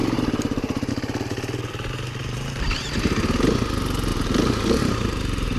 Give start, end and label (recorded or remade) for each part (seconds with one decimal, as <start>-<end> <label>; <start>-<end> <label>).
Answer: 0.0-0.9 remade; 0.9-2.2 recorded; 2.2-2.9 remade; 2.9-4.1 recorded; 4.1-5.6 remade